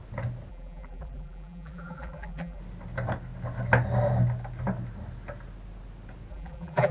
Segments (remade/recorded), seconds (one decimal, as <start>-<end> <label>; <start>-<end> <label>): 0.0-0.5 recorded; 0.5-2.6 remade; 2.6-6.3 recorded; 6.3-6.9 remade